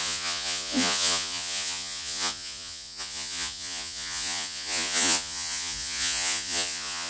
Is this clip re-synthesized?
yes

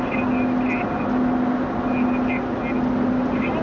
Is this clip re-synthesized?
no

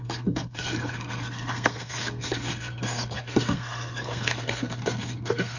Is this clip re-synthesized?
yes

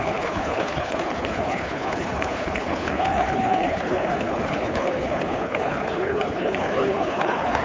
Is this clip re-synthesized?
yes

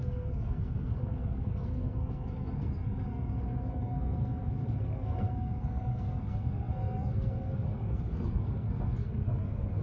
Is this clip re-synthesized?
yes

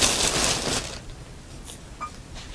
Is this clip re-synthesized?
no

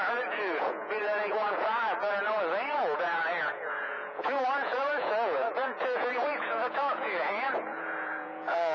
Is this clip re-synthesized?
yes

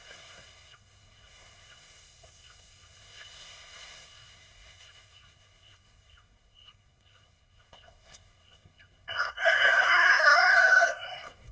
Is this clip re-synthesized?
yes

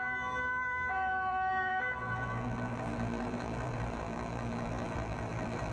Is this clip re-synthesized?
yes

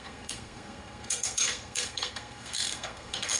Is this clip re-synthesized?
yes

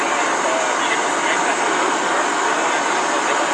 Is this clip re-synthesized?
no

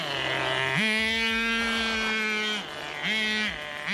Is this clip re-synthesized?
no